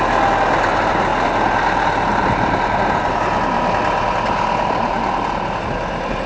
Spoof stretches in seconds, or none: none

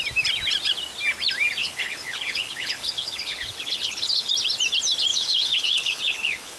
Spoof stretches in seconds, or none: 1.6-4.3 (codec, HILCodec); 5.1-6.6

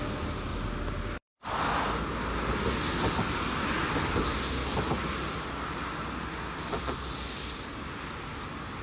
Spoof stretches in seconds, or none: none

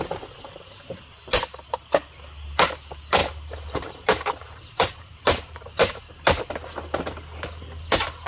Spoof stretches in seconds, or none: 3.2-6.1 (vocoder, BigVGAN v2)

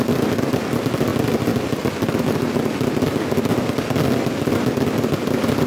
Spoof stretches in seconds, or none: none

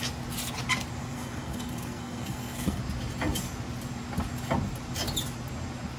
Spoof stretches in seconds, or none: 1.0-2.8 (codec, SNAC)

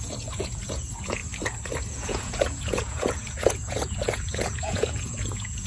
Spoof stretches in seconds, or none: 0.0-1.2 (vocoder, Vocos); 1.9-5.7